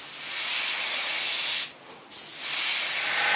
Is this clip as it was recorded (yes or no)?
yes